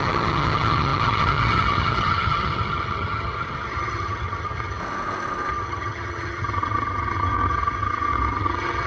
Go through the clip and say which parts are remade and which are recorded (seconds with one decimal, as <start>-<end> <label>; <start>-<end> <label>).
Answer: 0.0-4.8 remade; 4.8-5.5 recorded; 5.5-8.9 remade